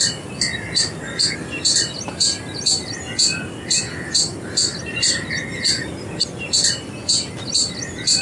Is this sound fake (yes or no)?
no